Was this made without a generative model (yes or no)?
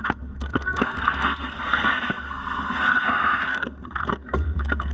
no